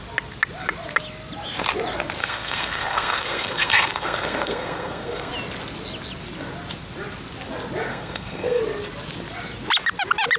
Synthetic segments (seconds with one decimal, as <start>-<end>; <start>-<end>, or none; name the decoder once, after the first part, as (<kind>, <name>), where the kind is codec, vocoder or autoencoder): 2.2-5.3 (codec, SNAC); 7.9-8.6

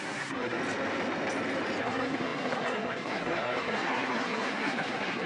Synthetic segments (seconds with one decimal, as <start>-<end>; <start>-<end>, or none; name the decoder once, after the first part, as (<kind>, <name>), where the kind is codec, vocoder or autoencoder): 0.0-0.6 (codec, SNAC); 1.8-5.3